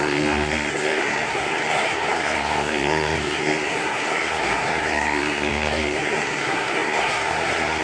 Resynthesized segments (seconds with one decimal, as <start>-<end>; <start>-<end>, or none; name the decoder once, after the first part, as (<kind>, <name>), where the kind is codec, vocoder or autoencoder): 0.0-7.8 (codec, SNAC)